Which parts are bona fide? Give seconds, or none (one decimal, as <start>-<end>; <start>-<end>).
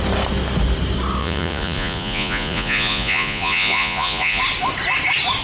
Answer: 0.0-1.2; 4.4-5.4